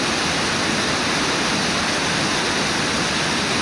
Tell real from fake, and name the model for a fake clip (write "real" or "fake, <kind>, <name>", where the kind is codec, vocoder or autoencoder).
real